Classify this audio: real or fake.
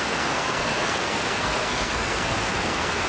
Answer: fake